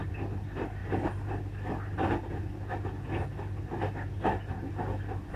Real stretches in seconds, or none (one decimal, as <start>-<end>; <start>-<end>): 0.0-5.4